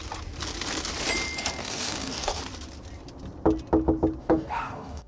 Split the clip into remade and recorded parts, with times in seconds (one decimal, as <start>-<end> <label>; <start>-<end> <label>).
0.0-1.6 recorded; 1.6-2.4 remade; 2.4-4.2 recorded; 4.2-5.1 remade